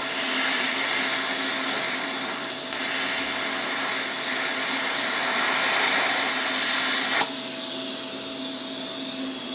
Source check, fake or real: real